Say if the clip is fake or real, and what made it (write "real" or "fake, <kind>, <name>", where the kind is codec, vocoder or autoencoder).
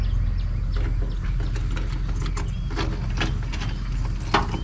real